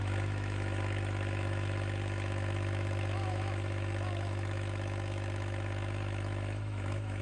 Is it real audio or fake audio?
fake